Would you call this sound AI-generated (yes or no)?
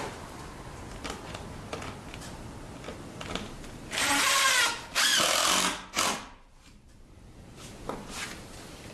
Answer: no